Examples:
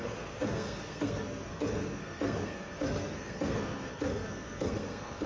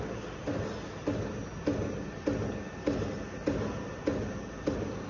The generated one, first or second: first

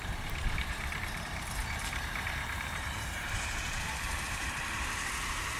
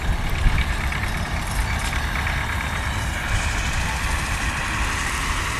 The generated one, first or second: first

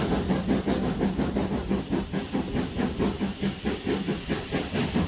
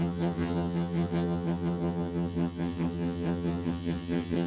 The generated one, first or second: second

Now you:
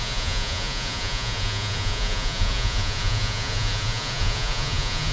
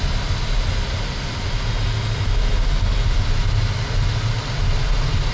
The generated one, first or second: first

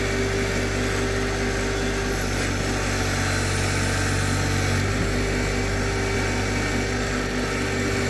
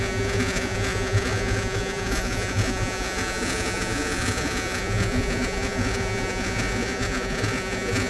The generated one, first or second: second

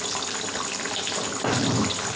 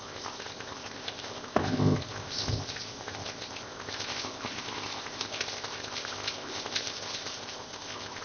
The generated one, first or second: second